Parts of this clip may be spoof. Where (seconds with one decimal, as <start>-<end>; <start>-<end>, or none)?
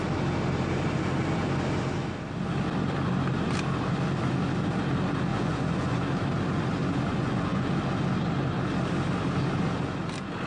5.3-6.0; 7.1-7.7